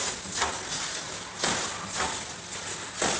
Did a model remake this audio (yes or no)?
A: no